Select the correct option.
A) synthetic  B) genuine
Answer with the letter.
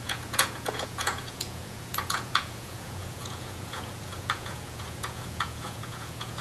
A